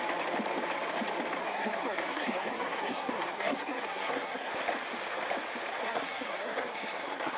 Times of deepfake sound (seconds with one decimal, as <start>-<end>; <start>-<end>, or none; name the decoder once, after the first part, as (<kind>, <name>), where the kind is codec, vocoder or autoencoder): 1.4-4.5 (codec, SNAC); 5.8-7.4